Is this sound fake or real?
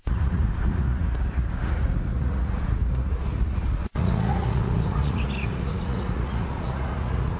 fake